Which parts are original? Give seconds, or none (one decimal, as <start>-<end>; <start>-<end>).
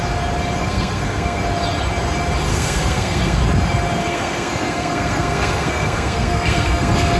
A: 0.0-0.6; 1.4-2.5; 3.4-4.0